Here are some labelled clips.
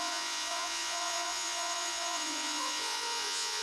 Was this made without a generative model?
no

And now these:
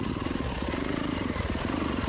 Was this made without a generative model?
no